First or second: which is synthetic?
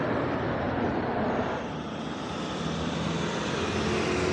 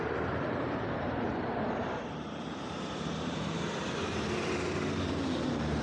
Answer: second